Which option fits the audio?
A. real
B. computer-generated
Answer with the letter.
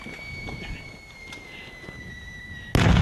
A